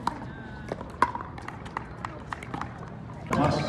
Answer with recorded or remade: recorded